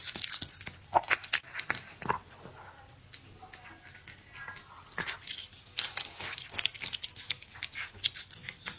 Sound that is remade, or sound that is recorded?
recorded